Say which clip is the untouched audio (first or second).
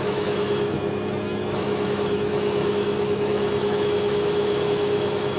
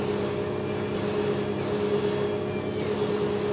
second